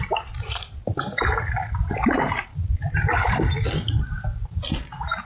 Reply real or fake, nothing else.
fake